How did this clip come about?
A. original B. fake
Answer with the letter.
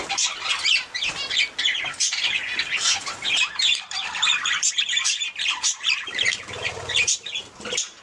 B